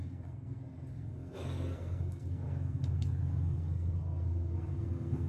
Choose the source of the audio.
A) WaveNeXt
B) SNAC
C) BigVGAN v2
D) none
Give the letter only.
B